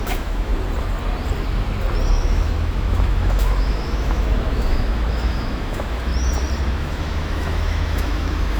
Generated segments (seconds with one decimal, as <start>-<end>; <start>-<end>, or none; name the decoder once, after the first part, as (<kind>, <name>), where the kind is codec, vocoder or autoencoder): 0.0-0.5 (autoencoder, DAC-VAE); 2.2-6.1; 6.7-8.6